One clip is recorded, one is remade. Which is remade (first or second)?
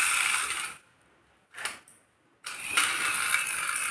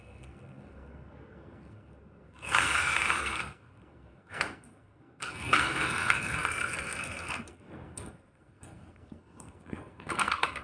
second